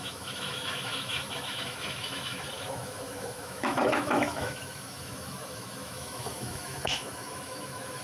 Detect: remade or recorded remade